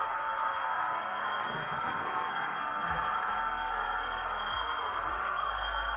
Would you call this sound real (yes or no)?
no